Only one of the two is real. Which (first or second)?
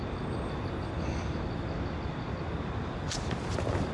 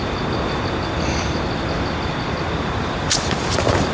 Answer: first